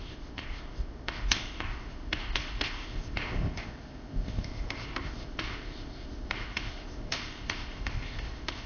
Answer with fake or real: fake